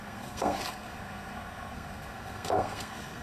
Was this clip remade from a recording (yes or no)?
yes